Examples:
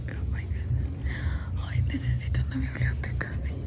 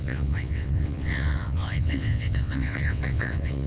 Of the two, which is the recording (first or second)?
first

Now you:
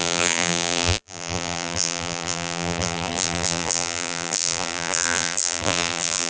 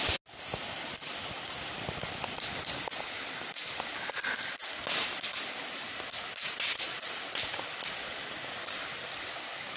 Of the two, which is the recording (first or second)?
second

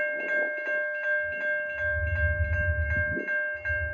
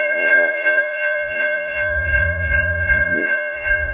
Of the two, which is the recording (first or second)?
first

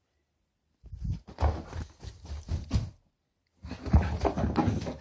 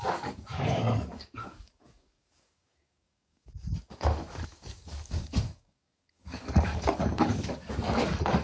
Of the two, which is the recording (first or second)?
first